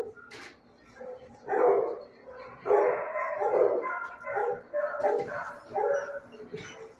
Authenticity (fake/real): real